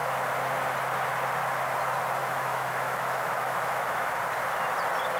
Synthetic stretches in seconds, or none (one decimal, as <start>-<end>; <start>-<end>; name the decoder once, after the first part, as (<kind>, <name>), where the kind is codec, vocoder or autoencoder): 2.2-4.2 (autoencoder, DAC-VAE)

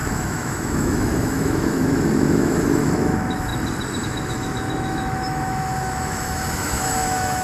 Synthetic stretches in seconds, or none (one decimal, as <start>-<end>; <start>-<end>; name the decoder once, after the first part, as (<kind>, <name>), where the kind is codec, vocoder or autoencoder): 0.0-3.5 (autoencoder, DAC-VAE); 4.0-7.4

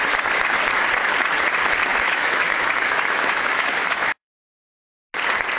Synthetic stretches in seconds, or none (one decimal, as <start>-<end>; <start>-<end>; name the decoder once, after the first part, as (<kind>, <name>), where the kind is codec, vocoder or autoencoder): 1.9-4.3 (autoencoder, DAC-VAE)

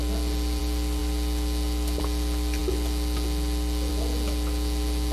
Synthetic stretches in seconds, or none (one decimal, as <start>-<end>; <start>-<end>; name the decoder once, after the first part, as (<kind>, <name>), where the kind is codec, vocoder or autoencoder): none

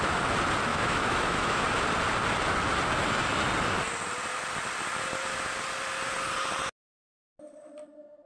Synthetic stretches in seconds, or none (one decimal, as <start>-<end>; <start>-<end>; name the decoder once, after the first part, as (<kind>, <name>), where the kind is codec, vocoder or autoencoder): 0.7-1.6 (autoencoder, DAC-VAE)

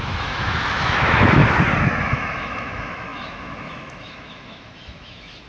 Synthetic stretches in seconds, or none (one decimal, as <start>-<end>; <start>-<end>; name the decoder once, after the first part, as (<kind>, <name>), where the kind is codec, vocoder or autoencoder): 0.0-1.4 (autoencoder, DAC-VAE); 2.0-5.5